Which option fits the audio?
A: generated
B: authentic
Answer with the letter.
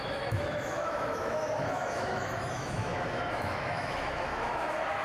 A